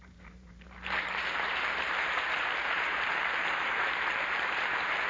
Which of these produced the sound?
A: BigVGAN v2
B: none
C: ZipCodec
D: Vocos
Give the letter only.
A